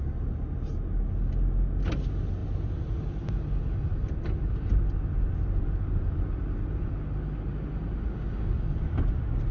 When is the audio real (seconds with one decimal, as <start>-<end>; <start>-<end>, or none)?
0.0-9.5